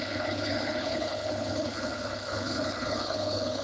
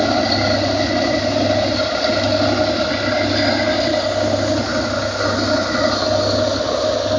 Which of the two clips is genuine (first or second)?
second